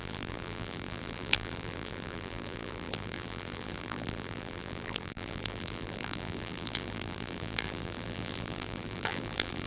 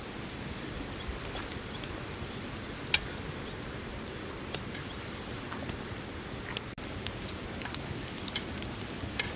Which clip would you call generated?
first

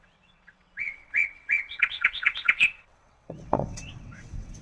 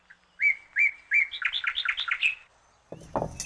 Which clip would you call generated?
first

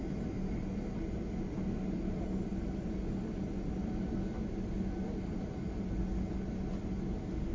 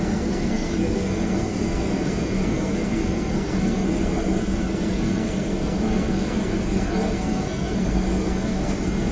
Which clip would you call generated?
second